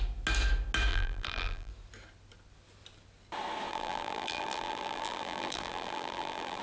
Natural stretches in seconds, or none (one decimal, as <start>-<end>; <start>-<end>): 0.0-0.9; 1.7-3.7